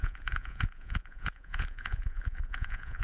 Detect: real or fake fake